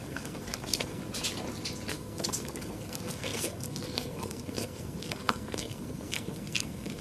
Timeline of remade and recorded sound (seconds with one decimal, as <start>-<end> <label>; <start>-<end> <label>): 0.0-1.0 remade; 1.0-1.9 recorded; 1.9-7.0 remade